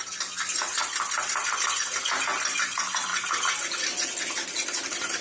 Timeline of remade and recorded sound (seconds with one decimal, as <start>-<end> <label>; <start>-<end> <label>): 0.0-5.2 recorded